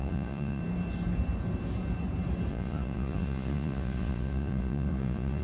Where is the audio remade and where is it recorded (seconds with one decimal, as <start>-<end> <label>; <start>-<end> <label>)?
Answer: 0.0-0.6 remade; 0.6-2.5 recorded; 2.5-5.4 remade